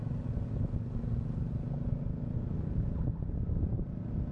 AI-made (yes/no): no